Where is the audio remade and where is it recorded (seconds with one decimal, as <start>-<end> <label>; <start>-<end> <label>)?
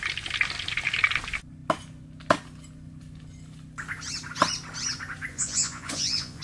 0.0-5.3 recorded; 5.3-6.4 remade